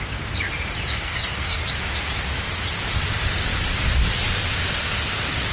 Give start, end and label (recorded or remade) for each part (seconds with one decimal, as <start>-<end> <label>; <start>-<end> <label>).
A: 0.0-0.9 recorded; 0.9-1.6 remade; 1.6-5.5 recorded